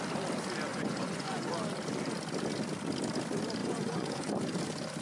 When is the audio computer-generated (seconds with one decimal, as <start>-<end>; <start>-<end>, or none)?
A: 0.7-1.5; 3.6-4.3